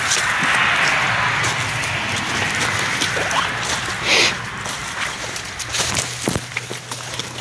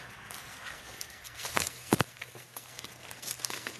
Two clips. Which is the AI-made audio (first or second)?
second